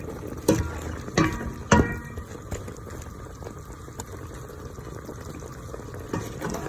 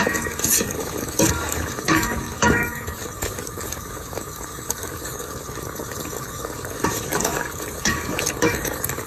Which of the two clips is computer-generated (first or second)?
second